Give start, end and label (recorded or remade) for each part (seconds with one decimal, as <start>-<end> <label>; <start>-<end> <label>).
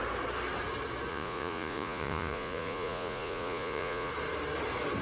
0.0-1.1 recorded; 1.1-4.1 remade; 4.1-5.0 recorded